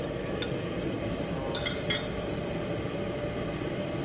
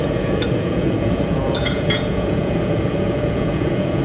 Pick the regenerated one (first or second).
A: second